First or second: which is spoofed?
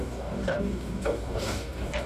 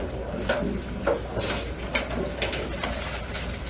first